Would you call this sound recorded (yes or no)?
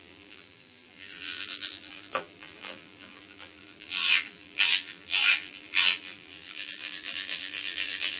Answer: no